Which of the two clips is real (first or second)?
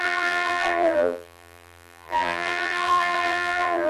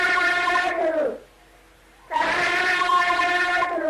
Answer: second